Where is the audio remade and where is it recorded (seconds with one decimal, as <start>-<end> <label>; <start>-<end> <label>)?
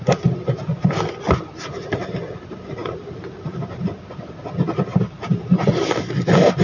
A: 0.0-4.9 recorded; 4.9-5.7 remade; 5.7-6.6 recorded